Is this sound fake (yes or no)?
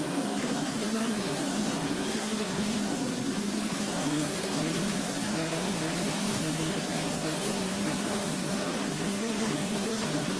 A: yes